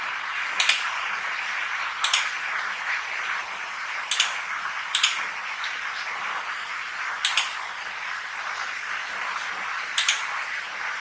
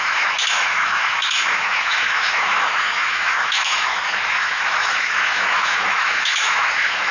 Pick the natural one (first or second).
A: first